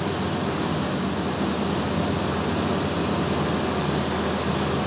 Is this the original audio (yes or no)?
yes